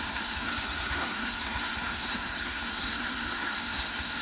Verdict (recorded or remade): remade